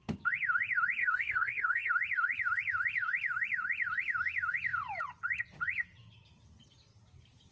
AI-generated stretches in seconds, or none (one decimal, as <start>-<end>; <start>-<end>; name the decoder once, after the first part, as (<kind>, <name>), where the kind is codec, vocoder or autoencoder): 1.0-1.9 (codec, SNAC)